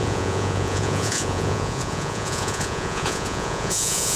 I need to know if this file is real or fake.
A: fake